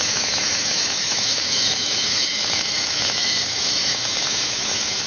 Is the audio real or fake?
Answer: fake